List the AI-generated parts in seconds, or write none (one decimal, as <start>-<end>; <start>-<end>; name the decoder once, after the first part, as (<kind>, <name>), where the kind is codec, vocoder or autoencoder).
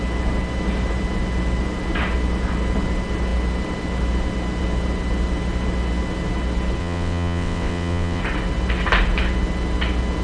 6.8-8.2 (vocoder, WaveNeXt)